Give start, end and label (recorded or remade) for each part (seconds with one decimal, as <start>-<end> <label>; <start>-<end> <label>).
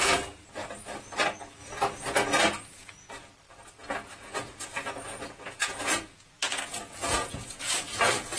0.0-0.6 remade; 0.6-1.2 recorded; 1.2-1.6 remade; 1.6-2.4 recorded; 2.4-3.2 remade; 3.2-4.3 recorded; 4.3-8.4 remade